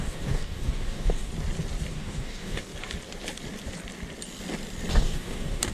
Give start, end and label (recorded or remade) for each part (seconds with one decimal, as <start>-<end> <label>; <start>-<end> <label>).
0.0-1.3 remade; 1.3-1.9 recorded; 1.9-2.7 remade; 2.7-4.9 recorded; 4.9-5.7 remade

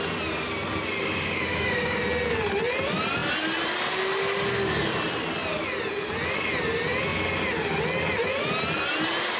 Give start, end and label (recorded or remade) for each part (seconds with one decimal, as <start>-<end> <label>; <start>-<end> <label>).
0.0-1.0 recorded; 1.0-2.0 remade; 2.0-9.4 recorded

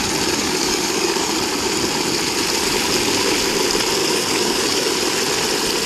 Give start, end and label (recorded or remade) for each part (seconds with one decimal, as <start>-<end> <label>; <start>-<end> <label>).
0.0-0.4 recorded; 0.4-1.3 remade; 1.3-4.0 recorded; 4.0-4.9 remade; 4.9-5.9 recorded